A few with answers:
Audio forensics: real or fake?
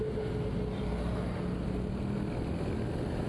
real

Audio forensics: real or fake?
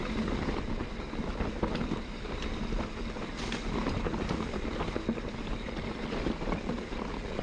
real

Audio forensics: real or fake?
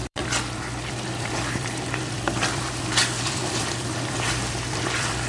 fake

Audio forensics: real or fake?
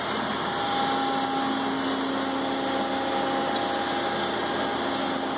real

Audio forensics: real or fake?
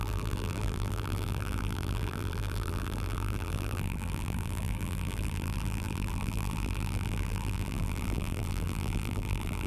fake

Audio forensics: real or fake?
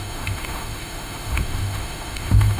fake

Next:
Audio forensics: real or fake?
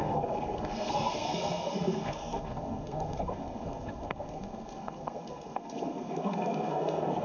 fake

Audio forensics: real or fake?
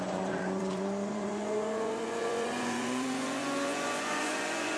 fake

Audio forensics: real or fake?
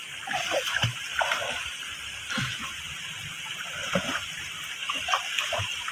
fake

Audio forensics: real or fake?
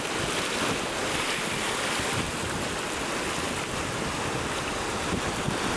real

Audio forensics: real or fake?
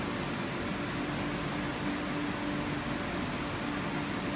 real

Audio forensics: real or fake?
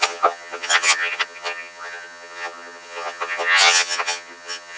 fake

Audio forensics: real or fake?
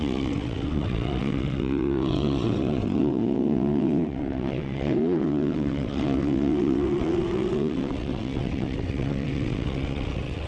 fake